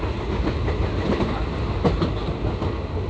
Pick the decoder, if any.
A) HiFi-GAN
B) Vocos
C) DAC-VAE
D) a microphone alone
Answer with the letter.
D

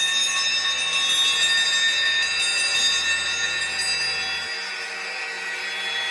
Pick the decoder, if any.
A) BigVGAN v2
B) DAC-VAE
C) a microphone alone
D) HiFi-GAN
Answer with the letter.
C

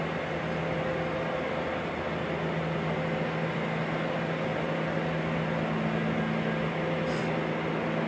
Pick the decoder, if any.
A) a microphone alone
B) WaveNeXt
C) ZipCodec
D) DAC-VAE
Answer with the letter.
A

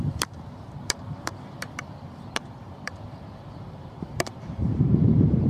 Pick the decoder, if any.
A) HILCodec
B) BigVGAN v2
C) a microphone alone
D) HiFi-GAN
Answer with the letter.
B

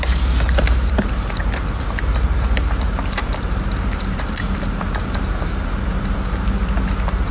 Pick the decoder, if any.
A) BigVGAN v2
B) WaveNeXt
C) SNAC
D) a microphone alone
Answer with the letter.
A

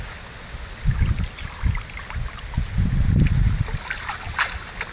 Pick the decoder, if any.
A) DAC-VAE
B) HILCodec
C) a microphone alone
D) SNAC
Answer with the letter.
C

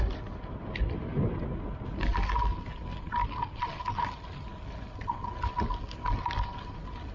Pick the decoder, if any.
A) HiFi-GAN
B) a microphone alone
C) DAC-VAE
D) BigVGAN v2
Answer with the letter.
B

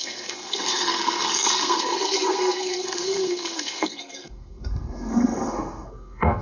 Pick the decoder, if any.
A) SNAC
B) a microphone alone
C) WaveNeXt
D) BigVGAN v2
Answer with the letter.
A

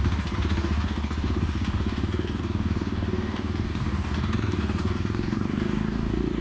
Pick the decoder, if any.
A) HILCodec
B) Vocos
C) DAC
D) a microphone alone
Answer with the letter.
C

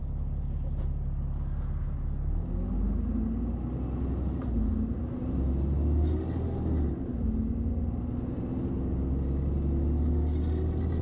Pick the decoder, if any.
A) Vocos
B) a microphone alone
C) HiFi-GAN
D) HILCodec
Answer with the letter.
B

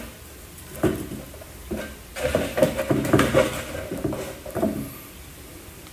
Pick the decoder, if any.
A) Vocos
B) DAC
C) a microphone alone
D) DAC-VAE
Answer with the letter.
C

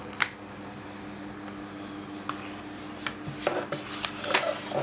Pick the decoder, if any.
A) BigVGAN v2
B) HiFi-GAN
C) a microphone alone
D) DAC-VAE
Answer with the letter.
C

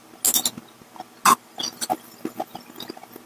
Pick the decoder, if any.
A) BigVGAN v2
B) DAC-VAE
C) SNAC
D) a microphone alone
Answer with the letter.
D